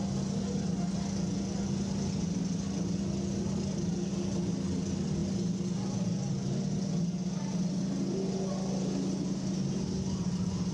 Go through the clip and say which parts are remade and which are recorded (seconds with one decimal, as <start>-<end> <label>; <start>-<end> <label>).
0.0-10.7 recorded